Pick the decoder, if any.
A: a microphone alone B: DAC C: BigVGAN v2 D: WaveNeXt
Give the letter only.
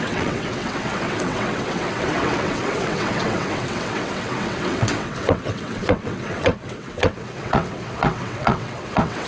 D